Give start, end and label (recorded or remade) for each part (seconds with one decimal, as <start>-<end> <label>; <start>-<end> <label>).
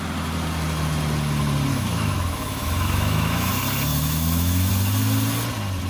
0.0-1.7 recorded; 1.7-3.5 remade; 3.5-3.9 recorded; 3.9-4.7 remade; 4.7-5.9 recorded